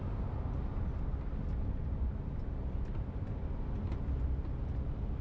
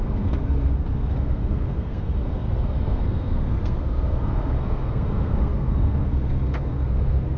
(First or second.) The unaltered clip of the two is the first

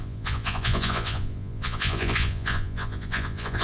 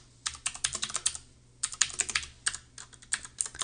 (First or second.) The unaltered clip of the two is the second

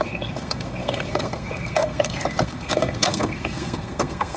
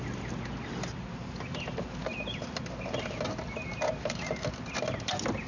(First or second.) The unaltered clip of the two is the second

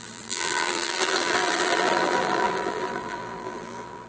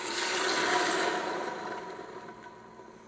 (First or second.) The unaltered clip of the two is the second